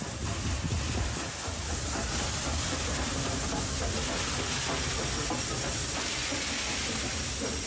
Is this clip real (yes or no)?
yes